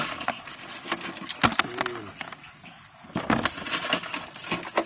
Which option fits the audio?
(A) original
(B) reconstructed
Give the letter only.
A